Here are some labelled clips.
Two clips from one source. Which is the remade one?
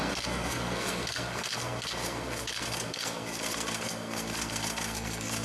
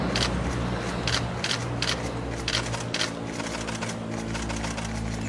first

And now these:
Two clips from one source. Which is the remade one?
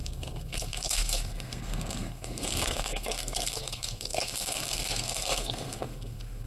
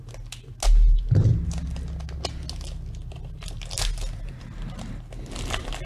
first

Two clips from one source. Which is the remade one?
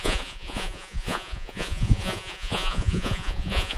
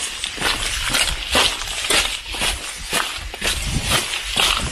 first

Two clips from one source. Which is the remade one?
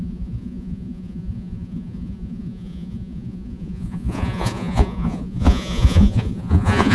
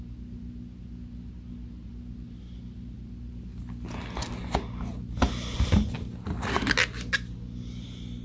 first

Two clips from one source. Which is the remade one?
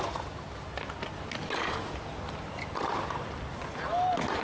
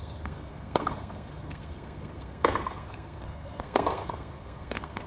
second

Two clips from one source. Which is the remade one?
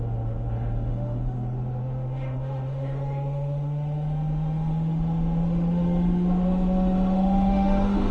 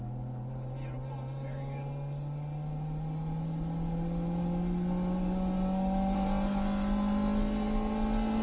first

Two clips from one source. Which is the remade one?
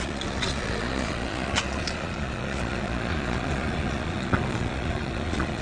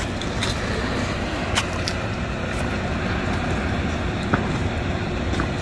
first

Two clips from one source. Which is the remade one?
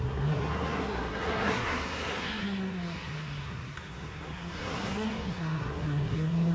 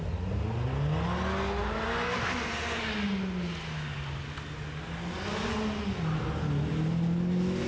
first